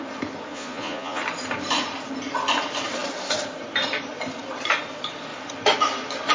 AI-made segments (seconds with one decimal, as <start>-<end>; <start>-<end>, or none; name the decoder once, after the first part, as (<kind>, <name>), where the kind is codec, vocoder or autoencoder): 0.5-1.2 (vocoder, Vocos)